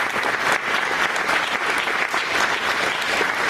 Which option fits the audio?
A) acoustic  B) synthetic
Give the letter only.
A